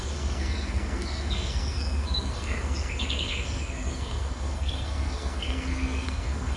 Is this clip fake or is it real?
fake